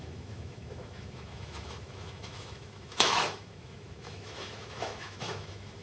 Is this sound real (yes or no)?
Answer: no